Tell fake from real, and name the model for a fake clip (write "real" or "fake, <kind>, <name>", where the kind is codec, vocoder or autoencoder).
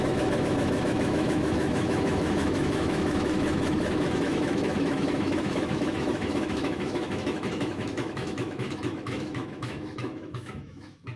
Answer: fake, autoencoder, DAC-VAE